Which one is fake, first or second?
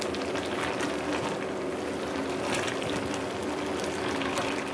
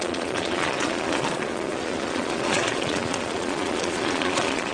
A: second